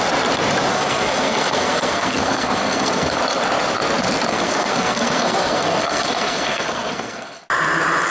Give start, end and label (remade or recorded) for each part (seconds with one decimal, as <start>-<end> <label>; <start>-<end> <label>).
0.0-0.7 recorded; 0.7-3.2 remade; 3.2-4.3 recorded; 4.3-7.4 remade; 7.4-8.1 recorded

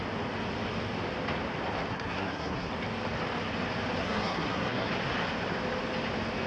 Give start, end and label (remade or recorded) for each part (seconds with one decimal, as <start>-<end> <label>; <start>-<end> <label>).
0.0-1.9 recorded; 1.9-2.7 remade; 2.7-4.0 recorded; 4.0-4.9 remade; 4.9-6.5 recorded

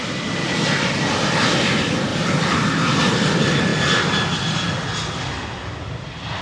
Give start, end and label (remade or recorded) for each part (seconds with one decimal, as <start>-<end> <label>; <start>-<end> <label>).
0.0-6.4 recorded

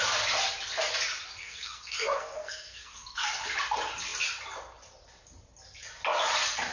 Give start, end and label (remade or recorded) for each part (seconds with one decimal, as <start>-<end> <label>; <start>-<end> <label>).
0.0-1.4 recorded; 1.4-3.4 remade; 3.4-6.7 recorded

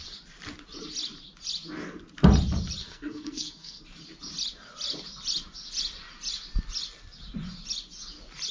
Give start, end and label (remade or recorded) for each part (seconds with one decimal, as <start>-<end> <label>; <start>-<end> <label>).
0.0-2.8 recorded; 2.8-3.8 remade; 3.8-8.5 recorded

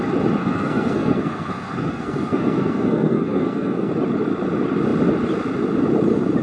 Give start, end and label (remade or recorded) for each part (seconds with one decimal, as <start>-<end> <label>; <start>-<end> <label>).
0.0-0.4 recorded; 0.4-3.9 remade; 3.9-6.4 recorded